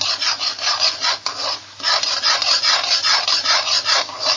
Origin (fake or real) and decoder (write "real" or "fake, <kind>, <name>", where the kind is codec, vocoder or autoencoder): real